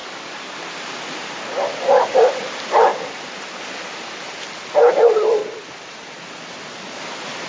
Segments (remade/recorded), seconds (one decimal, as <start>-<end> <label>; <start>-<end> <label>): 0.0-0.6 remade; 0.6-7.5 recorded